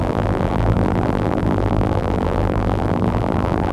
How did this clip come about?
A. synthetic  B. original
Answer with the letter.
A